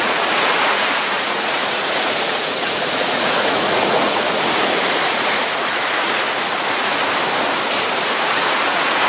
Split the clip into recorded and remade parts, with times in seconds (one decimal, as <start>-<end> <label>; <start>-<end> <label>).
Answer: 0.0-7.0 remade; 7.0-8.0 recorded; 8.0-9.1 remade